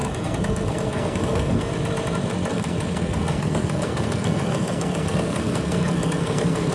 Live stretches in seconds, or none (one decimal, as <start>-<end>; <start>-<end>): 1.7-2.5